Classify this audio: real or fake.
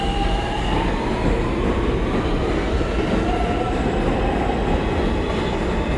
real